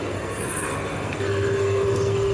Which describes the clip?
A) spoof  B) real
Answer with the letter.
A